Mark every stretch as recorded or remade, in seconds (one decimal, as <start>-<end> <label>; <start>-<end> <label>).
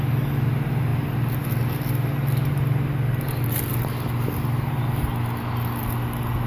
0.0-0.9 recorded; 0.9-4.8 remade; 4.8-6.5 recorded